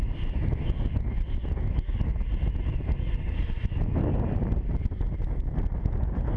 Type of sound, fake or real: real